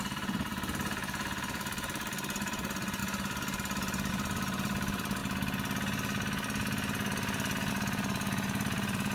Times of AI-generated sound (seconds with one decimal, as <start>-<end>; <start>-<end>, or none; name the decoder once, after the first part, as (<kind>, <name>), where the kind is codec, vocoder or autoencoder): 0.0-3.0 (vocoder, BigVGAN v2); 4.1-5.2; 7.7-9.1